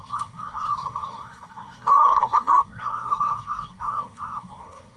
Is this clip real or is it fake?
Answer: fake